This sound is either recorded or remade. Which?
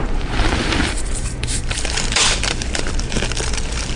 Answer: remade